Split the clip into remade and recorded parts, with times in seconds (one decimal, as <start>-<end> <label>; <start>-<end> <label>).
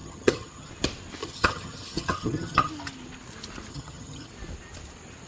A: 0.0-0.7 remade; 0.7-1.2 recorded; 1.2-2.7 remade; 2.7-3.7 recorded; 3.7-4.3 remade; 4.3-5.3 recorded